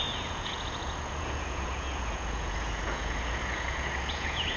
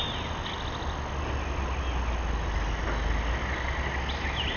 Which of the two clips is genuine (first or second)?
second